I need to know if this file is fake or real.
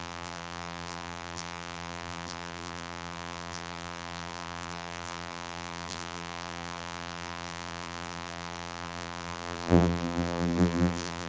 fake